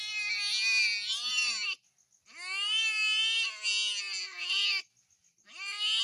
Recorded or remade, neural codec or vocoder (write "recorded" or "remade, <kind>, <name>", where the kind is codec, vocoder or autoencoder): recorded